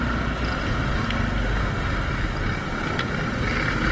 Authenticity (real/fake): real